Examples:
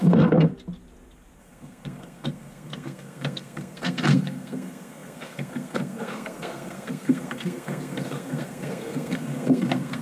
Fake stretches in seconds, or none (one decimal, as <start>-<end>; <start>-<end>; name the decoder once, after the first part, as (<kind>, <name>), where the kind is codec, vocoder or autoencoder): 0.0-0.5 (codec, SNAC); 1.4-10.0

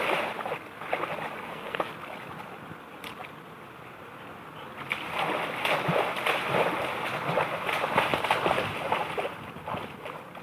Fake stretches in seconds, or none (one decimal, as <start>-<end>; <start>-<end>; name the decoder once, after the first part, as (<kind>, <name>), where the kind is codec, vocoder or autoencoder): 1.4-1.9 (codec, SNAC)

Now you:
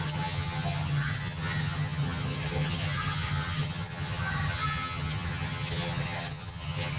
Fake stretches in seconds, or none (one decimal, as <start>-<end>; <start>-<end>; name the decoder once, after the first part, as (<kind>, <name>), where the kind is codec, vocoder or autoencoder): 0.0-7.0 (vocoder, HiFi-GAN)

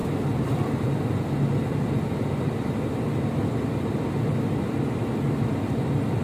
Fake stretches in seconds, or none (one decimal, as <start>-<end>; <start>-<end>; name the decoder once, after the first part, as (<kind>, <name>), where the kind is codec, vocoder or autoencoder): none